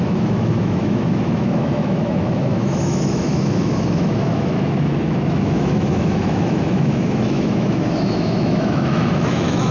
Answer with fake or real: fake